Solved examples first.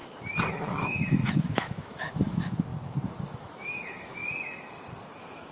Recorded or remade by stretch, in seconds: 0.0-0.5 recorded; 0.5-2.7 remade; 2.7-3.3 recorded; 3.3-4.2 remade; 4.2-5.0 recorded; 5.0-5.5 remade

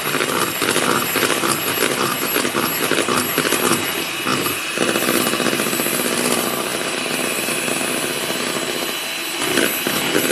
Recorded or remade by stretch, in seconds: 0.0-10.3 recorded

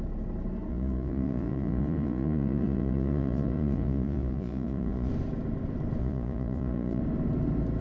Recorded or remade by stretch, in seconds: 0.0-0.7 recorded; 0.7-5.1 remade; 5.1-6.0 recorded; 6.0-7.0 remade; 7.0-7.8 recorded

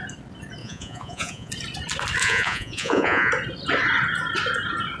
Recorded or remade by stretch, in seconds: 0.0-0.6 recorded; 0.6-1.5 remade; 1.5-2.2 recorded; 2.2-3.3 remade; 3.3-5.0 recorded

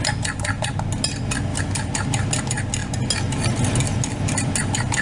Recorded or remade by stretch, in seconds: 0.0-1.5 recorded; 1.5-2.4 remade; 2.4-5.0 recorded

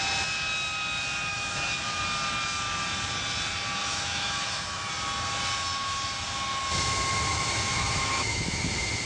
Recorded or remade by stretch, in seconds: 0.0-1.3 recorded; 1.3-2.0 remade; 2.0-3.8 recorded; 3.8-4.9 remade; 4.9-7.3 recorded; 7.3-8.6 remade; 8.6-9.1 recorded

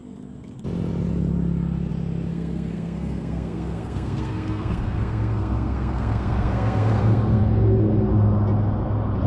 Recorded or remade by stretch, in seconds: 0.0-2.3 recorded; 2.3-7.4 remade; 7.4-9.3 recorded